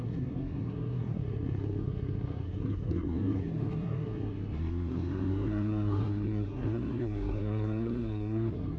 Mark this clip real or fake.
fake